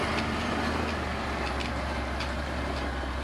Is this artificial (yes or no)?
no